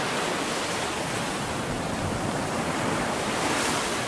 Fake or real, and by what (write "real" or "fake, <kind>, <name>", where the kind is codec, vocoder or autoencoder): real